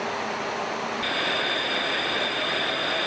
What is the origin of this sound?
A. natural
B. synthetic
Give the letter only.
A